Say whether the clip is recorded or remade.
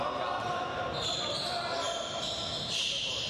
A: recorded